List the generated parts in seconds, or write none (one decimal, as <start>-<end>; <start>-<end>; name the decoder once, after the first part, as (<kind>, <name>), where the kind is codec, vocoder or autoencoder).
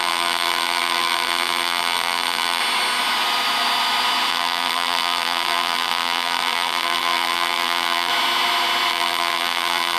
0.0-2.6 (vocoder, BigVGAN v2); 4.3-8.1; 8.9-10.0